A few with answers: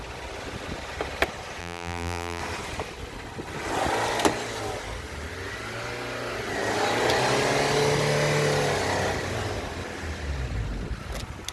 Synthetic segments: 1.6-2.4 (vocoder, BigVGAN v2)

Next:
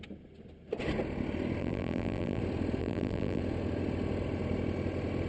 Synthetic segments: 1.6-2.4 (vocoder, BigVGAN v2); 2.8-3.4

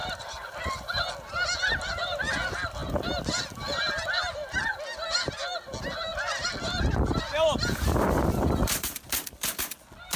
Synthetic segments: 0.0-1.1 (vocoder, BigVGAN v2); 6.1-9.6

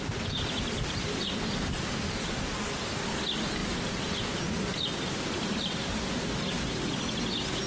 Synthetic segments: 3.6-4.4 (vocoder, BigVGAN v2); 4.9-6.1

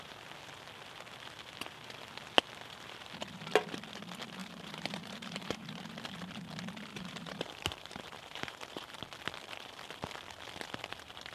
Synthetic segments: 4.4-5.9 (vocoder, BigVGAN v2); 6.9-9.0

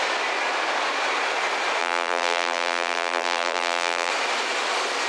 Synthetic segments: 1.8-4.1 (vocoder, BigVGAN v2)

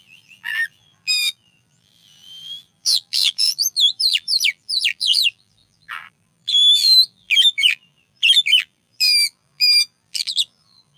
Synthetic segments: 0.0-11.0 (vocoder, BigVGAN v2)